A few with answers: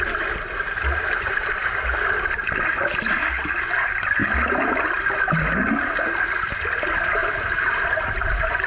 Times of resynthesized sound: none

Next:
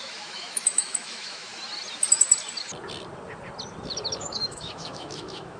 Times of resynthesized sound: 0.0-1.5 (autoencoder, DAC-VAE); 4.2-5.6

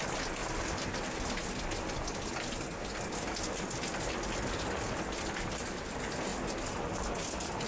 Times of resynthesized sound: none

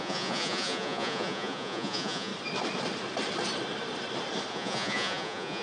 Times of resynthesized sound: 0.0-2.3 (vocoder, Vocos); 4.5-5.6

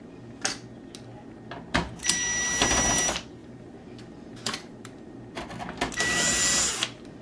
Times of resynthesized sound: 3.4-5.2 (vocoder, BigVGAN v2)

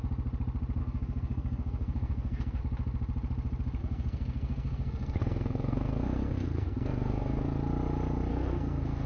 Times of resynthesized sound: 0.8-2.6 (codec, SNAC); 3.8-7.4; 8.3-9.1

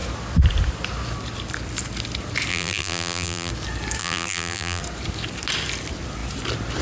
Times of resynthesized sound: 2.5-3.5 (vocoder, BigVGAN v2); 4.0-4.8

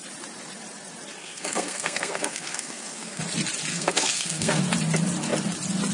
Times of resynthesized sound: 1.2-3.2 (codec, SNAC); 3.7-4.6